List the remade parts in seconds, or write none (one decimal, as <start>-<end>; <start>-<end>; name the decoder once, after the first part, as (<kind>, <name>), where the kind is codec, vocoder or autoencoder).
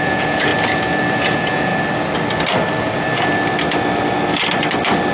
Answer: 0.0-0.5 (vocoder, Vocos); 1.2-1.7